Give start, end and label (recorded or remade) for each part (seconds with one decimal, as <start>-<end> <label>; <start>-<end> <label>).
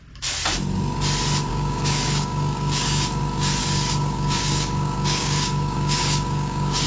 0.0-1.5 recorded; 1.5-3.2 remade; 3.2-3.6 recorded; 3.6-6.9 remade